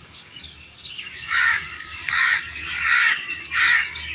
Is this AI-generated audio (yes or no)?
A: yes